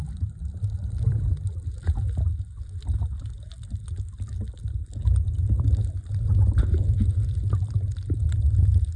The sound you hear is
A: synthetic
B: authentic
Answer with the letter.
B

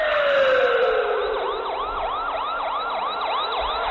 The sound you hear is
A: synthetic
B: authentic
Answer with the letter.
B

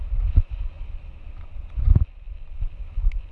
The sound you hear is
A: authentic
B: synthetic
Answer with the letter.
A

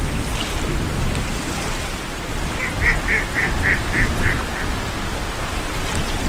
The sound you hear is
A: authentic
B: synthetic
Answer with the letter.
A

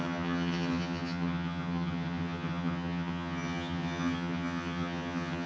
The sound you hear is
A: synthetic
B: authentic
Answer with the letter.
A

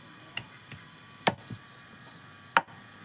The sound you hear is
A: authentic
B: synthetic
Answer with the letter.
A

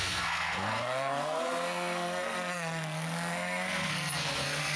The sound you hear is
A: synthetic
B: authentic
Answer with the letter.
A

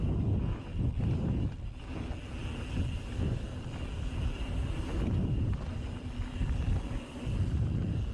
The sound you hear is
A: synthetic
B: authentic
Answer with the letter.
B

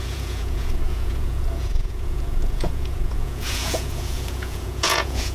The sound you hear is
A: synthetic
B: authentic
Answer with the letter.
A